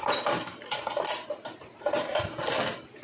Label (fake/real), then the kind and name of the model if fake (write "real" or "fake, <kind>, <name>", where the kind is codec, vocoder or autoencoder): fake, vocoder, BigVGAN v2